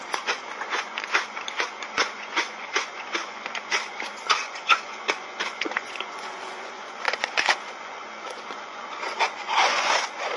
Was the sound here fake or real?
fake